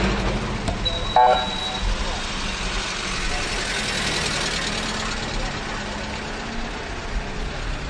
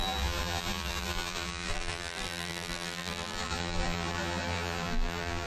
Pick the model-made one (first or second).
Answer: second